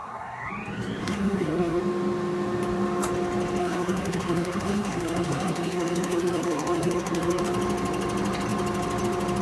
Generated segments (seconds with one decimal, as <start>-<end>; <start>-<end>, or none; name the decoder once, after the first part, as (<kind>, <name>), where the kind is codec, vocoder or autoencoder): 0.0-0.5 (codec, SNAC); 1.0-1.8; 3.6-7.4